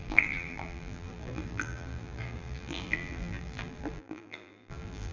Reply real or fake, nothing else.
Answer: fake